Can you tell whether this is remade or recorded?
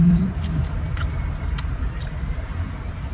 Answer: remade